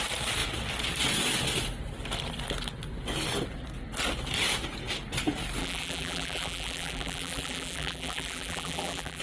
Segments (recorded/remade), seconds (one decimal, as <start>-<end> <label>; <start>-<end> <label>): 0.0-5.6 recorded; 5.6-9.2 remade